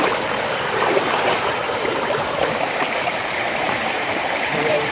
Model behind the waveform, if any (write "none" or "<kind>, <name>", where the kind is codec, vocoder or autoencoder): vocoder, BigVGAN v2